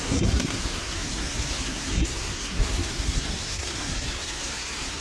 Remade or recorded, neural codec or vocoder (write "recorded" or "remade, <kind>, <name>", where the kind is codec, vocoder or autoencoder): remade, codec, SNAC